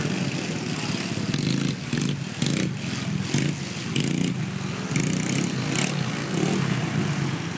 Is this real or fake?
real